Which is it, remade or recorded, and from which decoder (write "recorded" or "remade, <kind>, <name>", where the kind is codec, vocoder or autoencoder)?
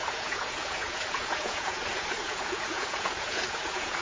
remade, vocoder, Vocos